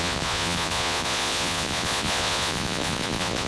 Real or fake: fake